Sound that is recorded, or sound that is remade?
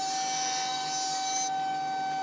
recorded